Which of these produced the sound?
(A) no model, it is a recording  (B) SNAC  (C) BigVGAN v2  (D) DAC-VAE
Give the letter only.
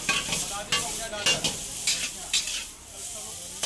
A